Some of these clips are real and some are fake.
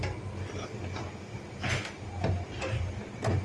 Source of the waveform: real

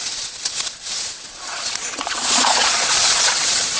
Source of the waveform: fake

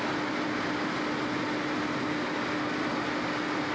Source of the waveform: real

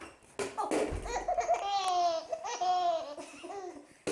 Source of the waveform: real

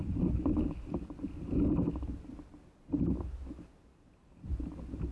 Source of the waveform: real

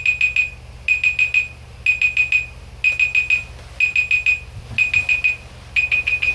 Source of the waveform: real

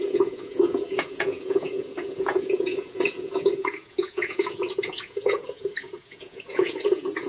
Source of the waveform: fake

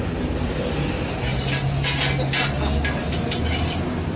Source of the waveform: real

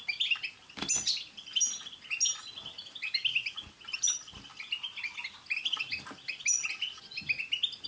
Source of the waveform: real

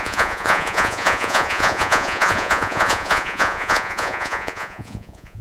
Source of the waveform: fake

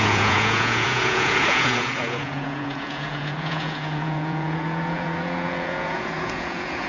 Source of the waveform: fake